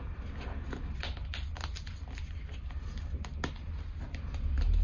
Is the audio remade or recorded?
recorded